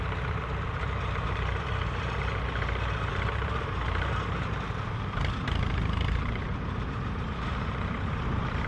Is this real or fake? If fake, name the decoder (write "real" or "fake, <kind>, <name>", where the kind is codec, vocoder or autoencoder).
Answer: fake, vocoder, BigVGAN v2